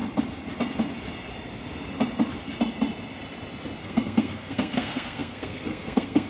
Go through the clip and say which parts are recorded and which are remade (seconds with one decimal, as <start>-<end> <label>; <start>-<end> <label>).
0.0-3.8 recorded; 3.8-6.3 remade